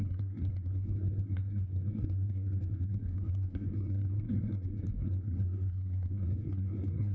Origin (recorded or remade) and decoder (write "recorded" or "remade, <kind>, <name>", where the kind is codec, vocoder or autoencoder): remade, codec, SNAC